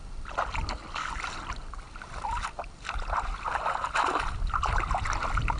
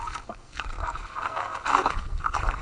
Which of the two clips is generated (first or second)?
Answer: second